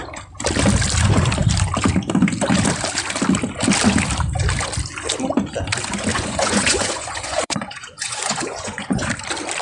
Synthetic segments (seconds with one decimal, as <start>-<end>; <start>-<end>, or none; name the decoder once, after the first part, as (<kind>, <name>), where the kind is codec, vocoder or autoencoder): 6.1-9.1 (vocoder, Vocos)

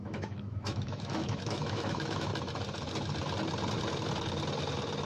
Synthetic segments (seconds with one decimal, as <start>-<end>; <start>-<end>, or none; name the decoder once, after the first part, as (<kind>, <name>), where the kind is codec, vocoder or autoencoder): 0.0-2.3 (autoencoder, DAC-VAE)